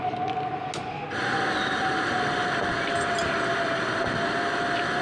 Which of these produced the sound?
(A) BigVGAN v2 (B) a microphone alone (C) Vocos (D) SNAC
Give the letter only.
B